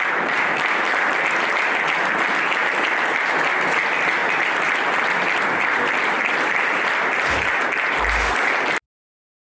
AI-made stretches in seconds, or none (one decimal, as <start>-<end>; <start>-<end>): none